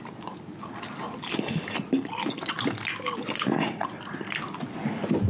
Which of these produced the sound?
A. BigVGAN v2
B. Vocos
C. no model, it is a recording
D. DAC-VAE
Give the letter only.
C